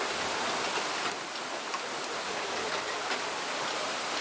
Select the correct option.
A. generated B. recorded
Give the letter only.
B